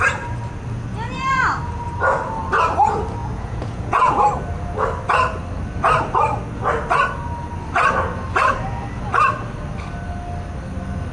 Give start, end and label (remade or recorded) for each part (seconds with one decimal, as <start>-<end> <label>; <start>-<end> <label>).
0.0-3.2 recorded; 3.2-4.2 remade; 4.2-11.1 recorded